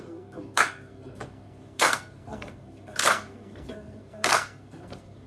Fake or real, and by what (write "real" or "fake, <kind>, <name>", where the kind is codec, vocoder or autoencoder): fake, codec, SNAC